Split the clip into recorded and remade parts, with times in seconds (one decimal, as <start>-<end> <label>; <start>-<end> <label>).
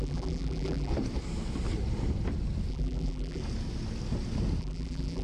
0.0-0.9 remade; 0.9-2.7 recorded; 2.7-3.4 remade; 3.4-4.6 recorded; 4.6-5.2 remade